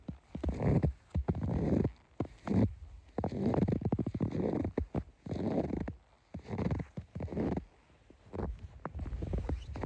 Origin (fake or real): real